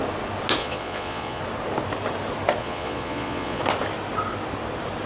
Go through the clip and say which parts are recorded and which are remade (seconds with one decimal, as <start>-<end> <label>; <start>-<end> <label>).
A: 0.0-0.6 recorded; 0.6-1.4 remade; 1.4-2.6 recorded; 2.6-3.6 remade; 3.6-5.1 recorded

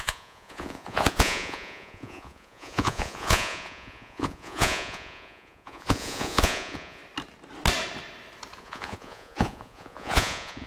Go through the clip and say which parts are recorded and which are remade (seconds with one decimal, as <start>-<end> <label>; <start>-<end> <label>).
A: 0.0-7.0 remade; 7.0-8.6 recorded; 8.6-10.7 remade

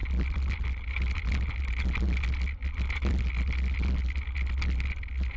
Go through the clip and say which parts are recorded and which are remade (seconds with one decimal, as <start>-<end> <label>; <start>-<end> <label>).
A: 0.0-5.4 recorded

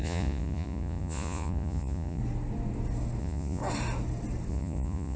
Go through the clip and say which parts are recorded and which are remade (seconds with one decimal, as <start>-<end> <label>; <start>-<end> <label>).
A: 0.0-2.2 remade; 2.2-3.2 recorded; 3.2-3.6 remade; 3.6-4.5 recorded; 4.5-5.2 remade

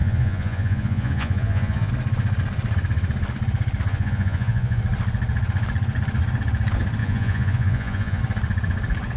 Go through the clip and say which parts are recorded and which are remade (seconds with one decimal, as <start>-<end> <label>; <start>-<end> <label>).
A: 0.0-1.9 remade; 1.9-3.9 recorded; 3.9-4.8 remade; 4.8-7.0 recorded; 7.0-8.2 remade; 8.2-9.2 recorded

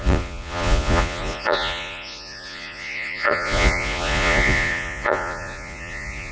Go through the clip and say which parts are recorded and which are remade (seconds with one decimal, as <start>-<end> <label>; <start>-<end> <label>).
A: 0.0-6.3 remade

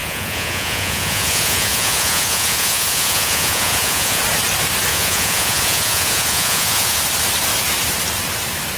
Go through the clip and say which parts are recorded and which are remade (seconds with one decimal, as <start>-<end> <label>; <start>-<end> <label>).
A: 0.0-4.2 remade; 4.2-4.9 recorded; 4.9-7.0 remade; 7.0-8.8 recorded

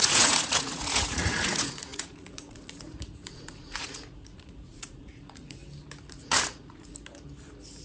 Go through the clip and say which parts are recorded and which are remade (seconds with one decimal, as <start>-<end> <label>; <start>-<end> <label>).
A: 0.0-5.6 remade; 5.6-6.1 recorded; 6.1-6.9 remade; 6.9-7.8 recorded